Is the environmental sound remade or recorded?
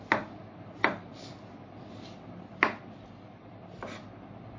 recorded